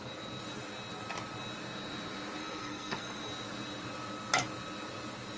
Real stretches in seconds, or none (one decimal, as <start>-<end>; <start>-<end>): 0.0-2.4; 3.3-5.4